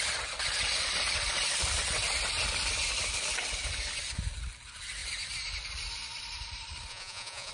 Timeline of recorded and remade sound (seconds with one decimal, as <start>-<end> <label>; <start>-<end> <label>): 0.0-6.9 recorded; 6.9-7.5 remade